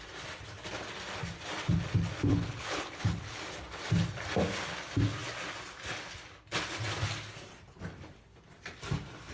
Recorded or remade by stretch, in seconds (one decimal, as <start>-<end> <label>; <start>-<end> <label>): 0.0-2.3 recorded; 2.3-3.4 remade; 3.4-9.3 recorded